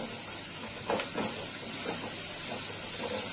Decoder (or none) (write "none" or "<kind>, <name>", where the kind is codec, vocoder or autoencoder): none